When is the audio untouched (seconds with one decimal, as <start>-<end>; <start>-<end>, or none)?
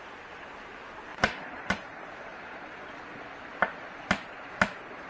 0.0-1.1; 1.7-2.3; 2.9-5.1